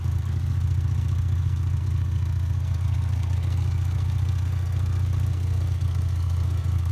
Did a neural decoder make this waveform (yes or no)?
yes